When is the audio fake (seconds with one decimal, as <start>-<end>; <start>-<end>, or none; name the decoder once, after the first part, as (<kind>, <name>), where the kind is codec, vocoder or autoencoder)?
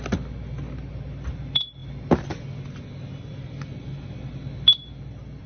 none